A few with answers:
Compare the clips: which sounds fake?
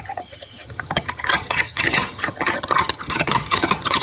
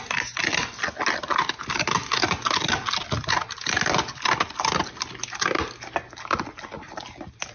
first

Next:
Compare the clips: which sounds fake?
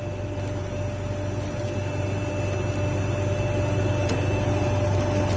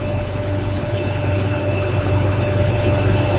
second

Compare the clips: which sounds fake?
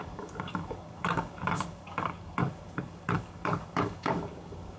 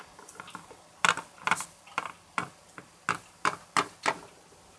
first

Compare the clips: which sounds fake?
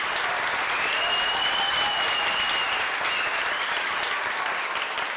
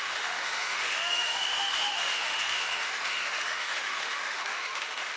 second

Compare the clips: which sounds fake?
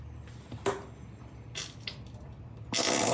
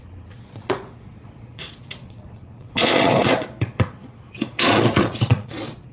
second